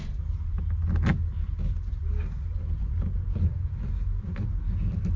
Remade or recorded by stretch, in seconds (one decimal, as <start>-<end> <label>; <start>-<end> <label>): 0.0-5.2 recorded